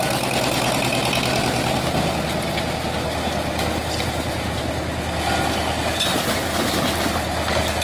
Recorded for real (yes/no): yes